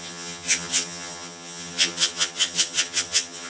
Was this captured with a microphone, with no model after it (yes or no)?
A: no